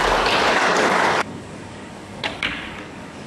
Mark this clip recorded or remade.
remade